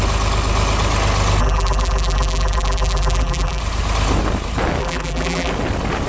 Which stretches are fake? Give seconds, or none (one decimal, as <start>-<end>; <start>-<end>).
1.4-3.6; 4.8-5.5